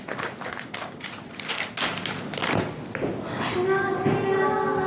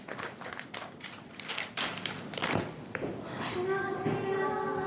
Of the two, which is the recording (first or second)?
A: first